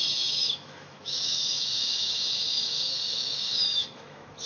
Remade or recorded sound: remade